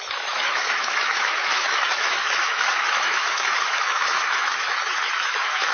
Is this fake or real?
fake